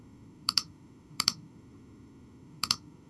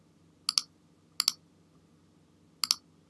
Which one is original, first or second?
second